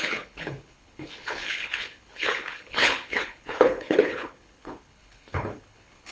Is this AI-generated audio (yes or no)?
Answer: yes